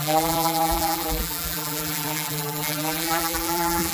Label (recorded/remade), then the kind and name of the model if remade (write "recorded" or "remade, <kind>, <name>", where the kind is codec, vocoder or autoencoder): remade, vocoder, BigVGAN v2